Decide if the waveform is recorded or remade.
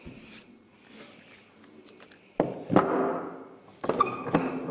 recorded